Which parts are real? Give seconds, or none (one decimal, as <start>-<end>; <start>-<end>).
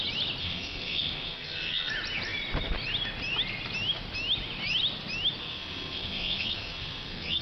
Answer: 0.0-0.4; 1.9-5.4